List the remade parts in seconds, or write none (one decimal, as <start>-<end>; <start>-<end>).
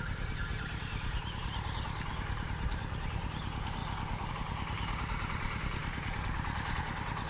0.0-3.8; 4.3-7.3